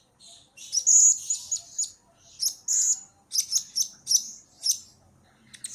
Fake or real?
real